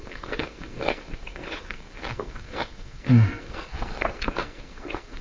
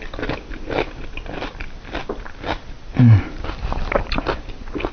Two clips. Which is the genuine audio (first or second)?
second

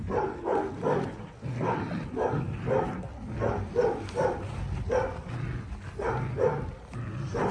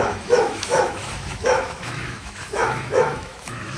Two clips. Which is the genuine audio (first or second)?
first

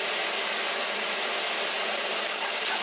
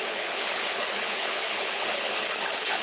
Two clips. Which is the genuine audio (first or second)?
first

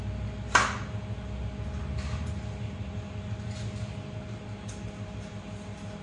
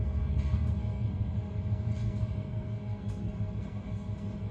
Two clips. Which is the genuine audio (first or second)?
first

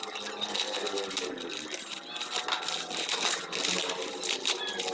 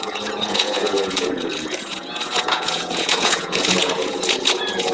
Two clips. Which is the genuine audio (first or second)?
first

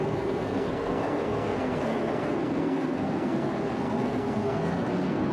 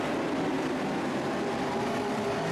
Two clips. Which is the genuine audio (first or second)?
second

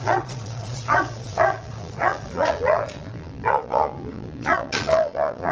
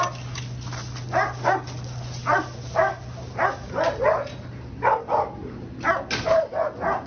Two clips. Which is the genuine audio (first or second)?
second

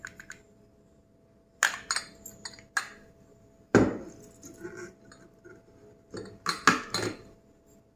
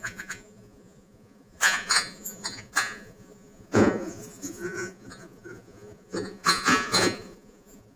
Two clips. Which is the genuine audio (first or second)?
first